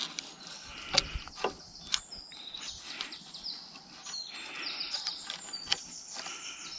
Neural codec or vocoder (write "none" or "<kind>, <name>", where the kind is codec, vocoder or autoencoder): none